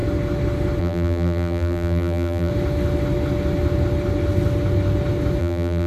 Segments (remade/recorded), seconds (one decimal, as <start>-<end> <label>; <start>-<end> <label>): 0.0-0.8 recorded; 0.8-2.5 remade; 2.5-5.4 recorded; 5.4-5.9 remade